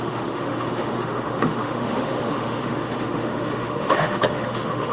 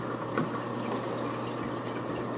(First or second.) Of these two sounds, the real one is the second